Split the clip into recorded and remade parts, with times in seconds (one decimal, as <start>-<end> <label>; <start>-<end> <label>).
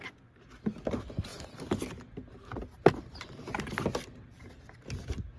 0.0-5.4 recorded